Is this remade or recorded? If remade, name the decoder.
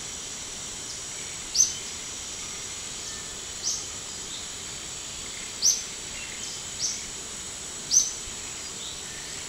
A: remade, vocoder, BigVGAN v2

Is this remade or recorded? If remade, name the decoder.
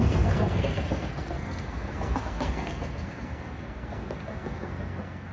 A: remade, codec, SNAC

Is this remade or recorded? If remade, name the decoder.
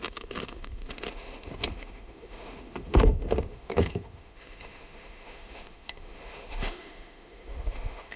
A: remade, autoencoder, DAC-VAE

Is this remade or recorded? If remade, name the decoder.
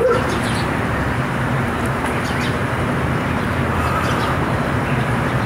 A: remade, vocoder, BigVGAN v2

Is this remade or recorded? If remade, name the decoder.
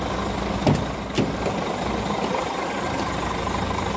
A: recorded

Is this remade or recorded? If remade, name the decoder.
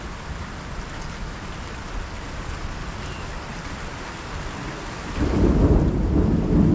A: recorded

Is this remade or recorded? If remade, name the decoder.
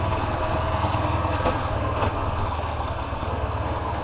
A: remade, codec, SNAC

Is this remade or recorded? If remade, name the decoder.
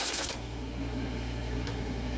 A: remade, codec, SNAC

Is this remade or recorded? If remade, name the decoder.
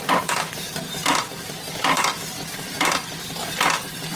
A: remade, vocoder, BigVGAN v2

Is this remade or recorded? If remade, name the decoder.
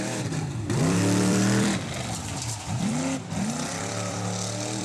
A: remade, vocoder, BigVGAN v2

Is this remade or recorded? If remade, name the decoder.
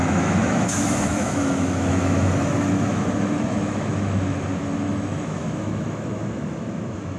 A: remade, autoencoder, DAC-VAE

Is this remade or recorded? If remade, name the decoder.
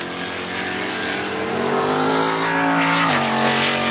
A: recorded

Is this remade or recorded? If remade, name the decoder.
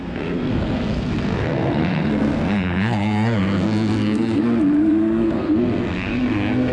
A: remade, codec, SNAC